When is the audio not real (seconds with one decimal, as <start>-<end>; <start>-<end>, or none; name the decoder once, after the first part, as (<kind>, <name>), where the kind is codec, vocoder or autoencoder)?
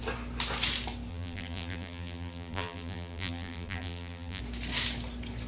1.1-4.4 (vocoder, BigVGAN v2)